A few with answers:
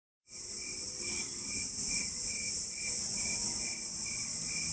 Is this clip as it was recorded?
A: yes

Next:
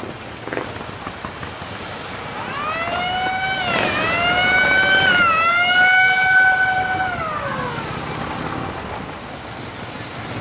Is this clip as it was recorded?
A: yes